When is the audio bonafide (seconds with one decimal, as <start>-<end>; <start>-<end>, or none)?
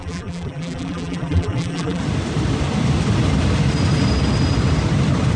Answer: 2.0-5.4